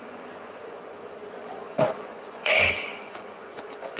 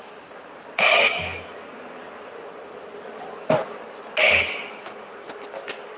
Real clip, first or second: second